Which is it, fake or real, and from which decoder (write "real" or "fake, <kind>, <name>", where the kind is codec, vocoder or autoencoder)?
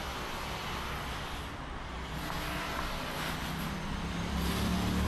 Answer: real